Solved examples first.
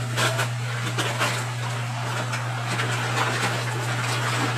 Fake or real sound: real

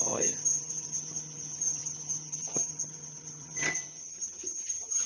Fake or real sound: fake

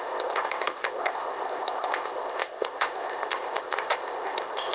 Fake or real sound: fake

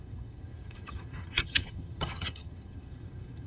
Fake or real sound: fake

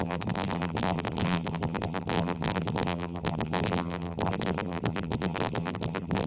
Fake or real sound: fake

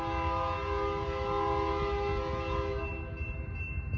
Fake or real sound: real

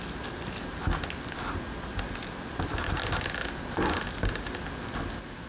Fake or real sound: real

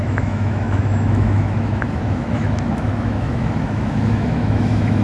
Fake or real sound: fake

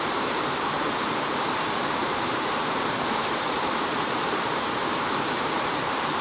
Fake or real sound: fake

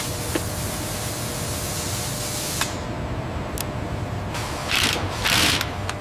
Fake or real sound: real